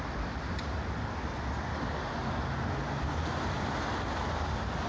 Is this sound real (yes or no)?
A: yes